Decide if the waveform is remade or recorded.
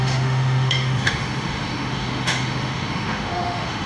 remade